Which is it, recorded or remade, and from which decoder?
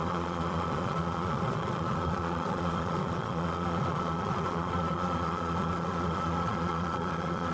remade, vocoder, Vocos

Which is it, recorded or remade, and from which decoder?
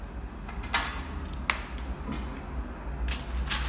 recorded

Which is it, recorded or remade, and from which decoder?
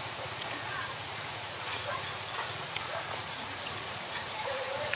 remade, vocoder, Vocos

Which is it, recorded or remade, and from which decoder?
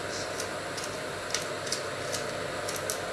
recorded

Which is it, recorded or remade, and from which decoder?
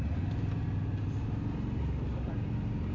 recorded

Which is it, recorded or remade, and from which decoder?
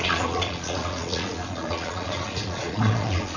remade, vocoder, Vocos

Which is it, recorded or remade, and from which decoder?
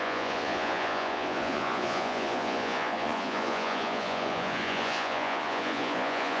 remade, vocoder, Vocos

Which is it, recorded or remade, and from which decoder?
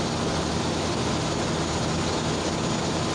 recorded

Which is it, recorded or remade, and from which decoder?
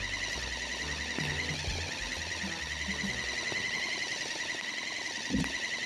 recorded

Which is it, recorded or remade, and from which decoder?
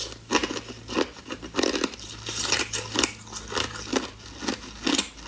recorded